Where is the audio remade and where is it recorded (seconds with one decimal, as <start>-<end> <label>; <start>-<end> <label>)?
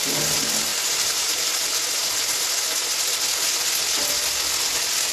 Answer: 0.0-0.7 recorded; 0.7-1.6 remade; 1.6-5.1 recorded